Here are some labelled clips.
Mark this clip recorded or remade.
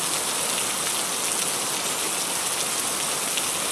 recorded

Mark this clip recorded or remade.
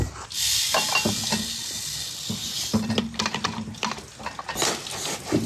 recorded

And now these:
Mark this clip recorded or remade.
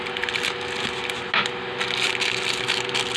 recorded